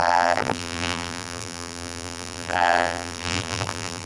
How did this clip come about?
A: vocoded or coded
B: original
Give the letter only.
A